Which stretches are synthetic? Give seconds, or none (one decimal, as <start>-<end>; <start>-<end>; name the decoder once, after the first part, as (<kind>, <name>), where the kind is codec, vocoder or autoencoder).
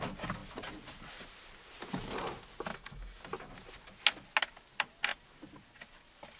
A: 2.7-3.2 (autoencoder, DAC-VAE)